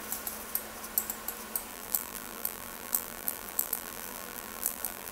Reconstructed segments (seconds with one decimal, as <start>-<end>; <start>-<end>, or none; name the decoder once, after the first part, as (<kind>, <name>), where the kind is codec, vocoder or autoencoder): 1.7-5.1 (vocoder, BigVGAN v2)